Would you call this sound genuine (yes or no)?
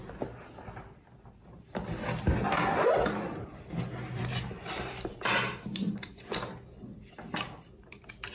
yes